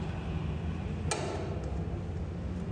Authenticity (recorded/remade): recorded